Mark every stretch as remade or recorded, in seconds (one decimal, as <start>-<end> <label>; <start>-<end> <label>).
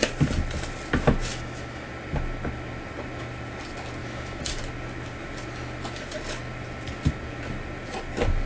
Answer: 0.0-1.3 recorded; 1.3-1.9 remade; 1.9-4.0 recorded; 4.0-4.6 remade; 4.6-8.5 recorded